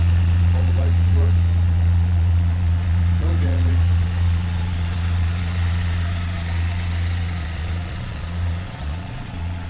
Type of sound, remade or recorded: remade